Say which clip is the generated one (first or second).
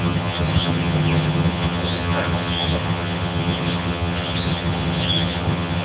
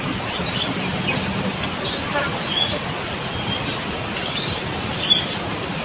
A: first